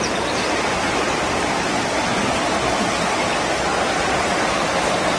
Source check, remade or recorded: recorded